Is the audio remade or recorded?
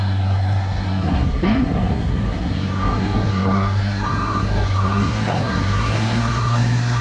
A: remade